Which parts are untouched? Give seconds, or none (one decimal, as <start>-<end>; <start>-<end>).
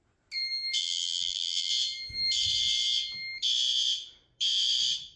0.0-0.8; 1.7-5.2